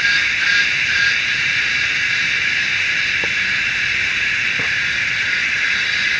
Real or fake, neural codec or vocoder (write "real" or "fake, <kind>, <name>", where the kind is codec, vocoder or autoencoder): fake, vocoder, BigVGAN v2